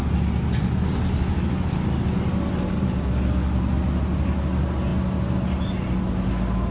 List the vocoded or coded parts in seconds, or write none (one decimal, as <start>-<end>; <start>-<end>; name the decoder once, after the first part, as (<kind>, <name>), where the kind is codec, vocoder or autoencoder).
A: none